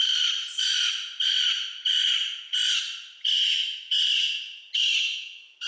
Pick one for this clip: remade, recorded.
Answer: remade